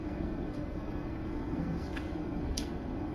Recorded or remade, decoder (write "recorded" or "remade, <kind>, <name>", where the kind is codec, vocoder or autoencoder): remade, codec, SNAC